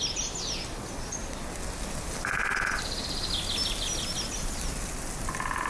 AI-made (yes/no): no